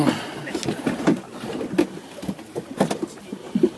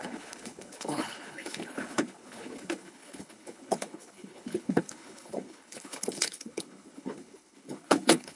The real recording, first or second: first